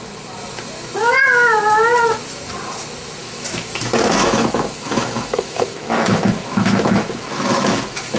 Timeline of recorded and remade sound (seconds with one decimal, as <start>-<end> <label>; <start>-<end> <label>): 0.0-3.2 recorded; 3.2-8.2 remade